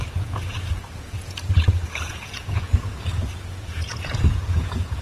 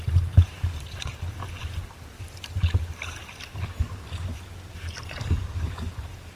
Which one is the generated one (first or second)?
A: first